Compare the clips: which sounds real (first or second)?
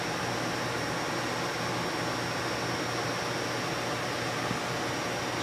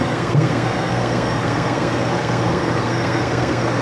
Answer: first